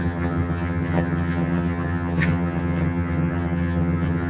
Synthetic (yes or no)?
yes